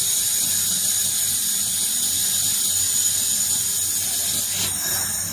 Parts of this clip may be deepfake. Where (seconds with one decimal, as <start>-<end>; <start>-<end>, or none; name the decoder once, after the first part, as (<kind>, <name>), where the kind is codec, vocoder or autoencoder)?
none

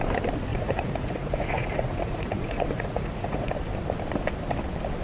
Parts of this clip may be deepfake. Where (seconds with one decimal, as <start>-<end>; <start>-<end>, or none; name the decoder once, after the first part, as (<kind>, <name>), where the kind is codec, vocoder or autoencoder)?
0.5-3.5 (vocoder, Vocos)

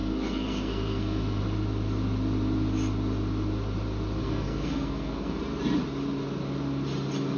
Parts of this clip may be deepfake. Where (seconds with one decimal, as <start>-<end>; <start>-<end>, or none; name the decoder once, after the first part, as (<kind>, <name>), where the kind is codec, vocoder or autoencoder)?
0.0-1.4 (codec, SNAC); 4.2-5.4

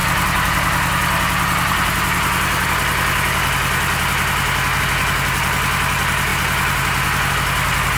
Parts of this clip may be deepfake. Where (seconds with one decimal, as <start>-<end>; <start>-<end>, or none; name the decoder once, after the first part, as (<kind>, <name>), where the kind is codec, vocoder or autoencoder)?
none

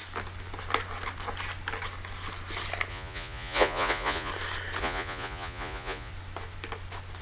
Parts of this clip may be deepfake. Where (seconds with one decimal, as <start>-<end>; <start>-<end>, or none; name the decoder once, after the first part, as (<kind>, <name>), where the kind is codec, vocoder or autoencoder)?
2.9-4.3 (vocoder, Vocos); 4.8-6.1

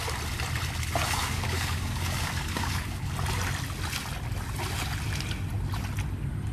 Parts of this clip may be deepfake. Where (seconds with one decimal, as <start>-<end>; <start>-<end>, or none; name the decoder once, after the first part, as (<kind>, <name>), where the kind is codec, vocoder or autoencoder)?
1.2-3.1 (codec, DAC)

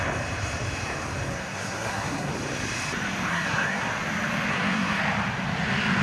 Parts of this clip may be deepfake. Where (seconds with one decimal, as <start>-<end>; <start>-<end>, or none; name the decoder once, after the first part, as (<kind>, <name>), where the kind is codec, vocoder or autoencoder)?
1.3-2.3 (codec, SNAC); 3.3-3.9; 4.5-5.0